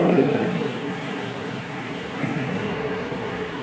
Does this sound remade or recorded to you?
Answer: remade